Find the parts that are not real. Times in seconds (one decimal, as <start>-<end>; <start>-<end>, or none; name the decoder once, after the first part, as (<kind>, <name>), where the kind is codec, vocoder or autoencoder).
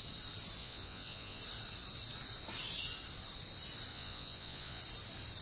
0.6-1.4 (vocoder, Vocos); 3.9-4.8